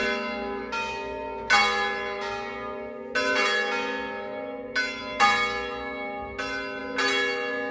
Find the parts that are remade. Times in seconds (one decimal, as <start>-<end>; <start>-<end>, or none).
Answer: none